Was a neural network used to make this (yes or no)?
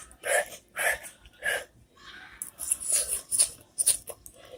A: no